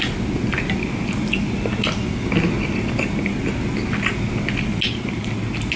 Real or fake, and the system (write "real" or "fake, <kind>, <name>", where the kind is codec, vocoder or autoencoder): real